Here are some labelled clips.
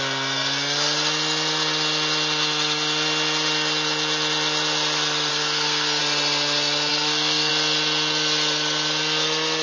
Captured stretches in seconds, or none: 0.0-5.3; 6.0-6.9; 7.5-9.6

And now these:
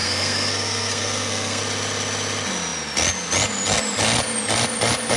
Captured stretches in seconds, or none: 1.6-5.2

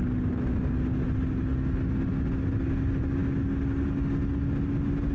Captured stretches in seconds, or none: 0.0-5.1

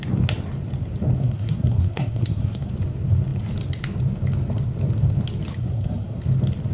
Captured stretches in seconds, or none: 0.0-1.2; 2.7-5.6; 6.2-6.7

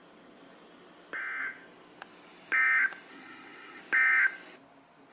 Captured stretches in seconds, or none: 0.0-3.1; 3.8-5.1